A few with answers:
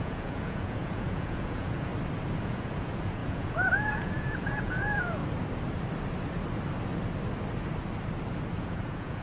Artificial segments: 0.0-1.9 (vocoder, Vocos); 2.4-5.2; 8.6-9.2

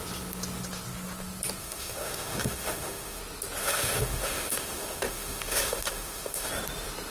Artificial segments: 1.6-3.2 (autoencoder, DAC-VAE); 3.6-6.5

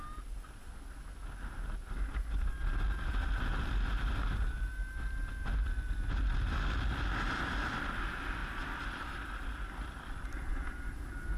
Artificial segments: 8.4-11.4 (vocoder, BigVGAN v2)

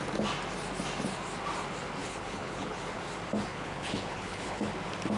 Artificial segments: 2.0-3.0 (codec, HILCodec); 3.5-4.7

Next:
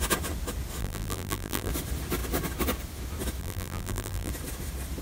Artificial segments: 0.8-1.7 (vocoder, BigVGAN v2); 3.4-4.3

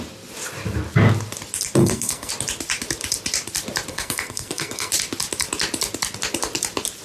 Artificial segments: 1.8-2.3 (codec, SNAC); 3.9-4.9